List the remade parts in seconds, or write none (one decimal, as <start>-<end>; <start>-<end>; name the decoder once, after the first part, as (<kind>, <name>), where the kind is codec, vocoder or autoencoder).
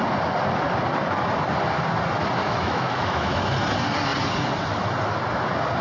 2.4-3.5 (autoencoder, DAC-VAE)